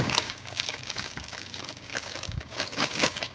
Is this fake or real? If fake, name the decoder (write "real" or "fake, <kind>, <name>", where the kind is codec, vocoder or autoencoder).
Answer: fake, codec, DAC